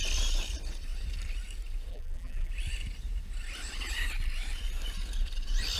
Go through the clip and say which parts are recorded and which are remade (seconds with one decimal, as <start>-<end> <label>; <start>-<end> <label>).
0.0-1.9 recorded; 1.9-2.5 remade; 2.5-5.8 recorded